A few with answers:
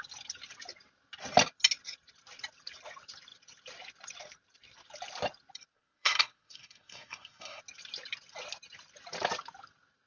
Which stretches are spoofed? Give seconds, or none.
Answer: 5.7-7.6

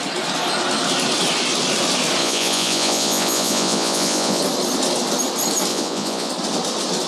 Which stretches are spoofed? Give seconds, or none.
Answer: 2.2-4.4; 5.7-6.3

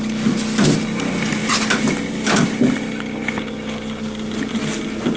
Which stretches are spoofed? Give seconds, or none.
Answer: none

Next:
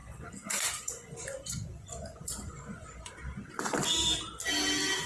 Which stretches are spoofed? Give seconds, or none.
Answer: 0.0-3.1